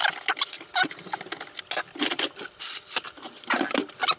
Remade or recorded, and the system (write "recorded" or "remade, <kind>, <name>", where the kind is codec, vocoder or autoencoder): recorded